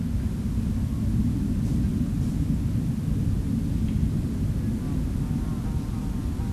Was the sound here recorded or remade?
recorded